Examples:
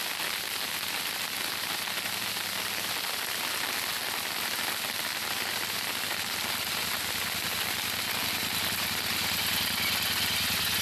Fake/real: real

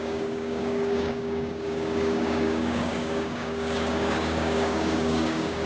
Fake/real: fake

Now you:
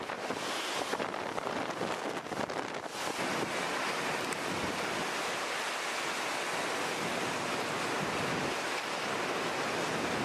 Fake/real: real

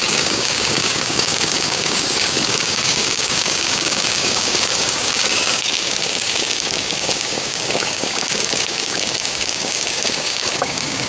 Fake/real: fake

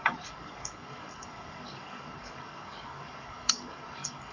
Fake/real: fake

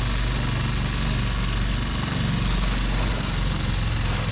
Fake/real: real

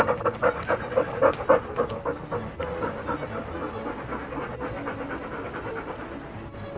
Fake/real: real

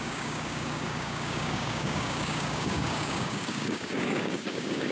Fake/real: fake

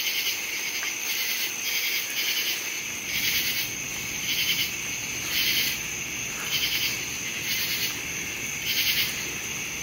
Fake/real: real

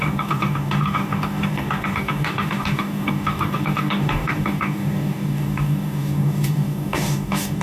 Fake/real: fake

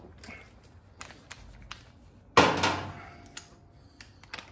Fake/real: real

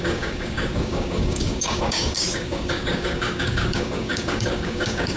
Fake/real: fake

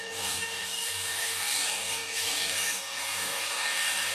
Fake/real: fake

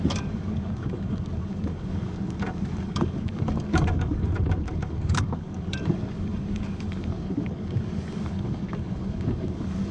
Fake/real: fake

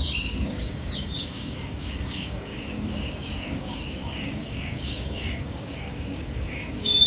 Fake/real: fake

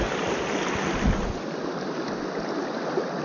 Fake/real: real